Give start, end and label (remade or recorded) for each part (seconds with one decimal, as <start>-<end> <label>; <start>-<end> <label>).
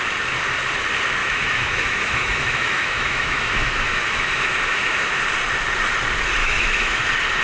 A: 0.0-1.2 recorded; 1.2-5.2 remade; 5.2-6.4 recorded; 6.4-7.0 remade; 7.0-7.4 recorded